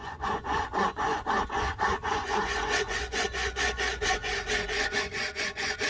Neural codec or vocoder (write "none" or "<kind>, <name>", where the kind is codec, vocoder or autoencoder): vocoder, Vocos